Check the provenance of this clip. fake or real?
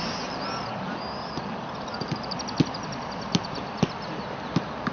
real